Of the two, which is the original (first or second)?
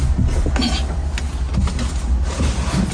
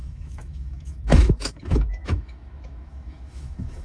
first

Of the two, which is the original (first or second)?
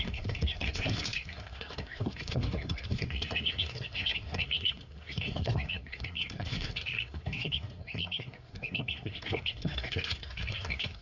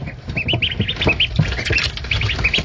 second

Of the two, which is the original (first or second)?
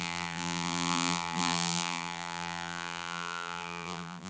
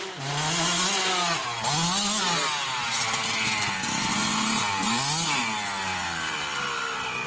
second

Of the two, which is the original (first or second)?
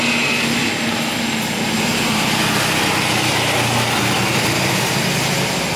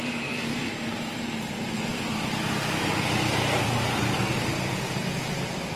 first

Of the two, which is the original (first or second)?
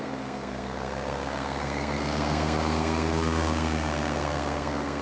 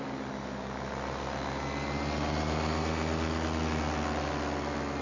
second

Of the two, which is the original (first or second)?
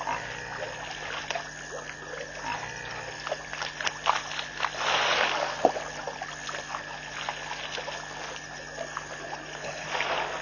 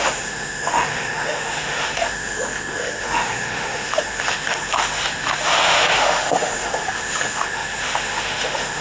first